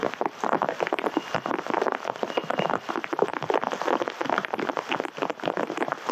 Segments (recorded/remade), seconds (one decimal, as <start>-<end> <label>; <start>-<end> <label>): 0.0-6.1 remade